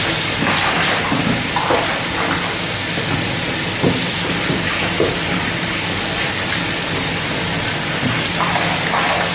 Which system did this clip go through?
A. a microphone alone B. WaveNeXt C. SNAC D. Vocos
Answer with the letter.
A